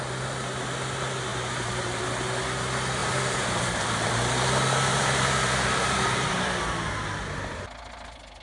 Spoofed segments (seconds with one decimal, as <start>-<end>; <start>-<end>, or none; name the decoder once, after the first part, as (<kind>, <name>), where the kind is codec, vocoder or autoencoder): 1.3-2.0 (vocoder, BigVGAN v2); 3.0-4.1; 4.9-6.6